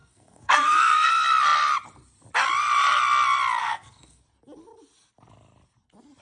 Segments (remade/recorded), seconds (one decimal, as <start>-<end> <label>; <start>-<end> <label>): 0.0-1.1 remade; 1.1-3.6 recorded; 3.6-4.2 remade; 4.2-6.2 recorded

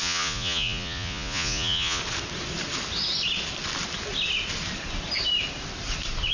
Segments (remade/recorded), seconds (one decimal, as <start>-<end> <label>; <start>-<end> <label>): 0.0-2.0 remade; 2.0-6.3 recorded

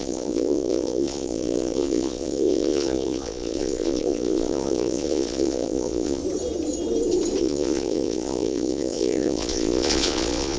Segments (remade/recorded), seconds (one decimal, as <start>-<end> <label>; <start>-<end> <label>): 0.0-6.2 remade; 6.2-7.4 recorded; 7.4-10.6 remade

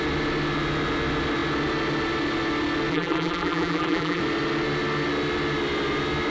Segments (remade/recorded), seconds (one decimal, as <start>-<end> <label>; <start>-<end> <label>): 0.0-2.9 recorded; 2.9-4.2 remade; 4.2-6.3 recorded

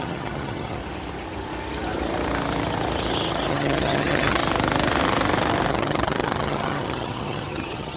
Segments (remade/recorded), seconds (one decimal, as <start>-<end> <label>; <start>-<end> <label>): 0.0-0.8 remade; 0.8-3.5 recorded; 3.5-4.4 remade; 4.4-5.7 recorded; 5.7-8.0 remade

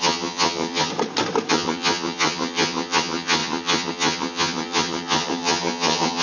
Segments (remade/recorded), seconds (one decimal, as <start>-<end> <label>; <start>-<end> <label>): 0.0-0.9 remade; 0.9-1.5 recorded; 1.5-6.2 remade